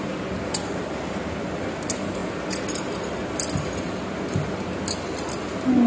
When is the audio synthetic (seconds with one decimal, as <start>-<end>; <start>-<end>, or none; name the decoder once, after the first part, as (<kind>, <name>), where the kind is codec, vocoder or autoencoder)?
none